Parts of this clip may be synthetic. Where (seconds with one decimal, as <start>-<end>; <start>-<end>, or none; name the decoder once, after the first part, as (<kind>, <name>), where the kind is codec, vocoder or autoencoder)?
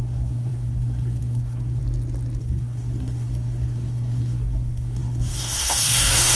0.0-1.8 (codec, SNAC); 2.4-6.3